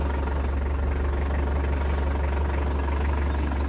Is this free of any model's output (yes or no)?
yes